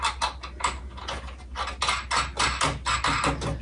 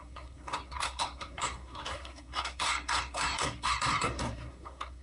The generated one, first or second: second